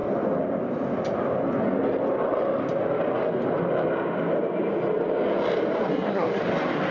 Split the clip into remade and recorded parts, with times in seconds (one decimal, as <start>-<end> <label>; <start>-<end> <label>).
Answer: 0.0-5.9 recorded; 5.9-6.4 remade; 6.4-6.9 recorded